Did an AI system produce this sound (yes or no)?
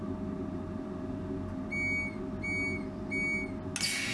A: no